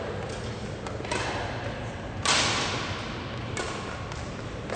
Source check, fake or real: real